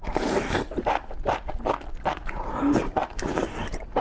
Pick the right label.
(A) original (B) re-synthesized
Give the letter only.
B